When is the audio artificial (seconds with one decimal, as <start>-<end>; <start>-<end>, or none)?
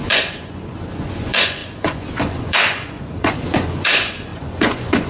0.0-5.1